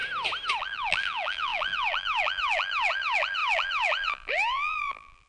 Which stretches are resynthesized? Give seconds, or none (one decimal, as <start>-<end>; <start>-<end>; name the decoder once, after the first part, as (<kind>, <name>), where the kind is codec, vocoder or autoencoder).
0.6-5.3 (vocoder, BigVGAN v2)